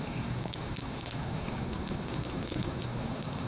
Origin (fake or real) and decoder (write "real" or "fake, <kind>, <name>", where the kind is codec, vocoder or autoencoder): fake, codec, SNAC